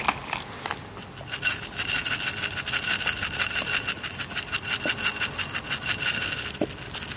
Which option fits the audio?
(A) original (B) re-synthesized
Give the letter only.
A